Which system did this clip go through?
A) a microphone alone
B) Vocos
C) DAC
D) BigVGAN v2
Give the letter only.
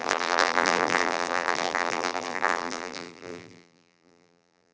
D